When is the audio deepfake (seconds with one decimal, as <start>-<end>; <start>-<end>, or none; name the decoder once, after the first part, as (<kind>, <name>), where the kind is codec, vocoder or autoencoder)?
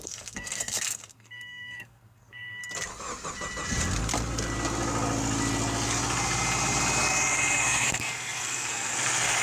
0.0-2.6 (codec, SNAC); 7.6-9.4